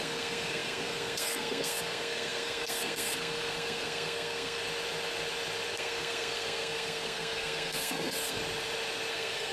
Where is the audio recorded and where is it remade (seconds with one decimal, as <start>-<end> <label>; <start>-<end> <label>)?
0.0-4.6 remade; 4.6-5.7 recorded; 5.7-8.4 remade; 8.4-9.1 recorded; 9.1-9.5 remade